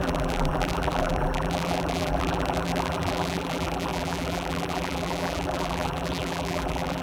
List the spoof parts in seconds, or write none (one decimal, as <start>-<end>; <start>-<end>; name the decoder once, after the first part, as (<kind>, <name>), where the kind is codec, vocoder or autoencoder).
0.0-7.0 (vocoder, BigVGAN v2)